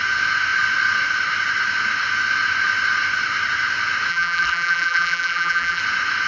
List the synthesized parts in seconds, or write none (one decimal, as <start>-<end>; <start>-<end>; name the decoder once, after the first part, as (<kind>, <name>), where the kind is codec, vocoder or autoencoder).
4.1-5.8 (vocoder, BigVGAN v2)